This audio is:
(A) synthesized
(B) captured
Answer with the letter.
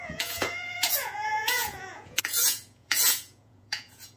A